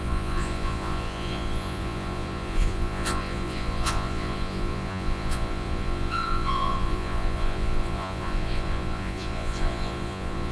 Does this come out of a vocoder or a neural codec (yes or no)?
yes